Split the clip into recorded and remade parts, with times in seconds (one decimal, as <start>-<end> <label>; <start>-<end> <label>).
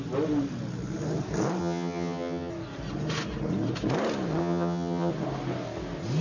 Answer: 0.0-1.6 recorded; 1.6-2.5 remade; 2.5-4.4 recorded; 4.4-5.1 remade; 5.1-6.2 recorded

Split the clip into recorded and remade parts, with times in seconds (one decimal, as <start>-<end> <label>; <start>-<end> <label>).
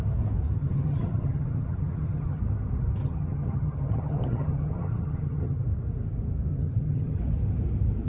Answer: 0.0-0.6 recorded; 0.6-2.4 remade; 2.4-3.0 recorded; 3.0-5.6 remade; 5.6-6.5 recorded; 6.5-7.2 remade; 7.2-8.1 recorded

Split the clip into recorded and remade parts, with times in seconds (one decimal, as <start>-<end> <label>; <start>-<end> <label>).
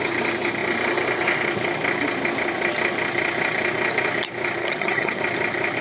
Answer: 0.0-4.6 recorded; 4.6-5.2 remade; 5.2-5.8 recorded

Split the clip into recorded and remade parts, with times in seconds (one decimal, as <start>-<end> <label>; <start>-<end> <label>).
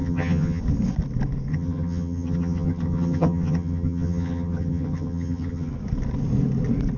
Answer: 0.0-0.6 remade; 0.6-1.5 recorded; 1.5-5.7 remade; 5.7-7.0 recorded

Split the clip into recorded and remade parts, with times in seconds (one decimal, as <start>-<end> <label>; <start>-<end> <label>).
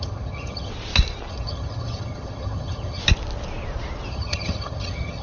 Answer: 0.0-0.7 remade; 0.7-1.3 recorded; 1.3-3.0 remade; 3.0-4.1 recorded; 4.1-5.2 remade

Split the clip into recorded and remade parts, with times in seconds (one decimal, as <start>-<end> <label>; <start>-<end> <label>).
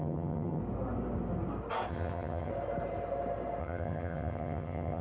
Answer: 0.0-0.6 remade; 0.6-1.9 recorded; 1.9-2.5 remade; 2.5-3.6 recorded; 3.6-5.0 remade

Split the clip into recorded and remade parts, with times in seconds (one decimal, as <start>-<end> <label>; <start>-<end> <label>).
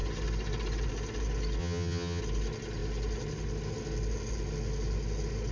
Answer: 0.0-1.6 recorded; 1.6-2.2 remade; 2.2-5.5 recorded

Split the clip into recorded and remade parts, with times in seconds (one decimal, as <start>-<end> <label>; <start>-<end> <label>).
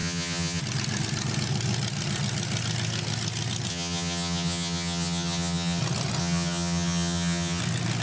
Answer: 0.0-0.6 remade; 0.6-3.7 recorded; 3.7-5.8 remade; 5.8-6.2 recorded; 6.2-7.6 remade; 7.6-8.0 recorded